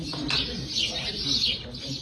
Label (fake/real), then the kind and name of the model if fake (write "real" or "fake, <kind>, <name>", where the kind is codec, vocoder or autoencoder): fake, vocoder, BigVGAN v2